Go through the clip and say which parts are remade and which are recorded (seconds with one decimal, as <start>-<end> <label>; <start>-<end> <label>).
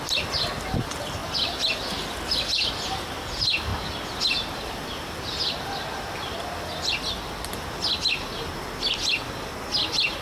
0.0-10.2 recorded